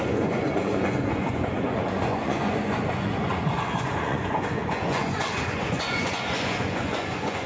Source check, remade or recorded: remade